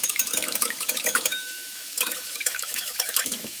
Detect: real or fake fake